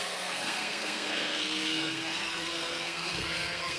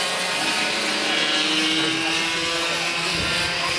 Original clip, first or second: second